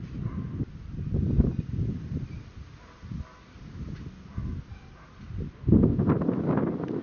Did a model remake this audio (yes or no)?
no